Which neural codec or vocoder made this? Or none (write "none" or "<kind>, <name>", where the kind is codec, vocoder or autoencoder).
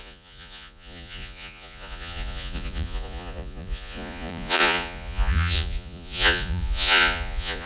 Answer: vocoder, Vocos